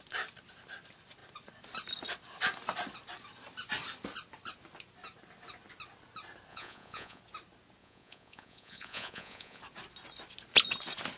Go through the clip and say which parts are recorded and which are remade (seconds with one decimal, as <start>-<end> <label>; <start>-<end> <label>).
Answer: 0.0-6.5 recorded; 6.5-7.2 remade; 7.2-7.8 recorded; 7.8-9.6 remade; 9.6-11.2 recorded

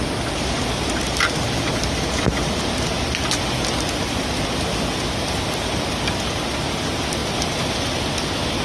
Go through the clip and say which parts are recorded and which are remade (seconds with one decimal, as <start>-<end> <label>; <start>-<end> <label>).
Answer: 0.0-8.6 recorded